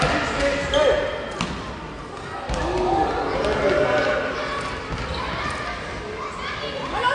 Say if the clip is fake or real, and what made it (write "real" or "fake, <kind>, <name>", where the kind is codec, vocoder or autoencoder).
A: real